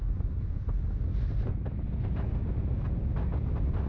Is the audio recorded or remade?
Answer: recorded